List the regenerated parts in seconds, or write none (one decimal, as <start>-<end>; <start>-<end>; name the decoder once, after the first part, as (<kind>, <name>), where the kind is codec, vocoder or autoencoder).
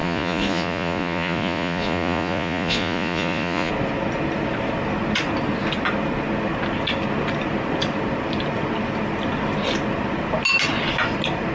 0.0-3.7 (vocoder, Vocos)